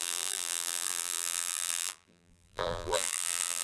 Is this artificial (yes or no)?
yes